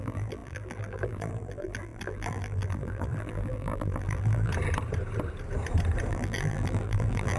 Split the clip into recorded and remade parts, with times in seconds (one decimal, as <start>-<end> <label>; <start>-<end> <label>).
0.0-4.5 remade; 4.5-6.1 recorded; 6.1-7.4 remade